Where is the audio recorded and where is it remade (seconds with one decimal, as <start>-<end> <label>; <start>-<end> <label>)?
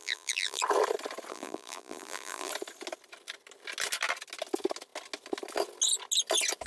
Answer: 0.0-0.6 remade; 0.6-1.3 recorded; 1.3-2.5 remade; 2.5-6.7 recorded